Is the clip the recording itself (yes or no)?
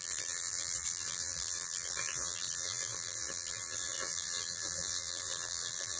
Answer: no